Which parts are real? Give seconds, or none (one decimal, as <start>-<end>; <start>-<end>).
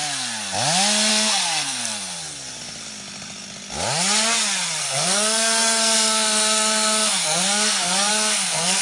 0.0-1.1; 1.8-4.8